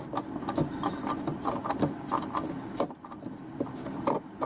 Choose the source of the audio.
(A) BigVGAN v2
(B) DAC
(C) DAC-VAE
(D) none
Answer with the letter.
D